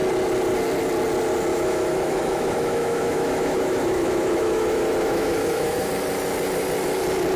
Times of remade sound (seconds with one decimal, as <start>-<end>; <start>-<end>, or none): 1.5-5.9

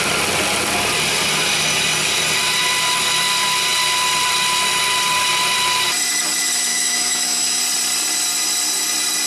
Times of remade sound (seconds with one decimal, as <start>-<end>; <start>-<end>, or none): 6.7-7.6